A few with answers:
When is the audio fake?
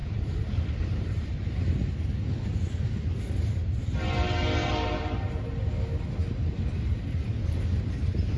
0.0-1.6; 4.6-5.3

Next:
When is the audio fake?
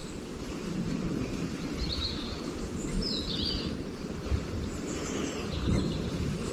3.9-5.2; 5.9-6.5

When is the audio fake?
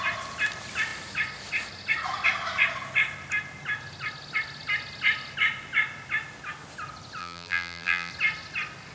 7.2-8.1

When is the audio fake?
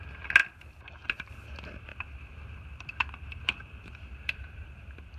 1.9-5.2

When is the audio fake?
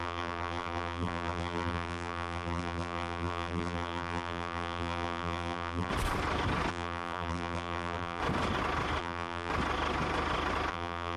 0.0-5.9; 6.7-8.2; 9.0-9.5; 10.7-11.2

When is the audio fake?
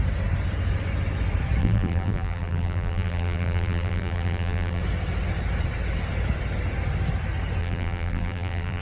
1.6-4.8; 7.6-8.8